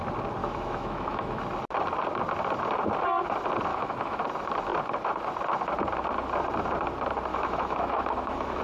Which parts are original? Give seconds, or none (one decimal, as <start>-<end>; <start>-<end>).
0.0-0.4; 1.4-3.7; 4.2-7.3

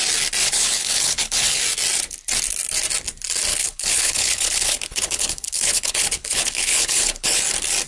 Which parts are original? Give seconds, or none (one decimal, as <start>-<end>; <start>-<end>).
0.0-0.4; 1.6-3.5; 7.4-7.9

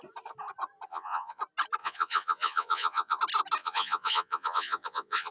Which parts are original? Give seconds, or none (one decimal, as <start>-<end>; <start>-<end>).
0.0-0.9; 1.4-1.8; 3.2-3.6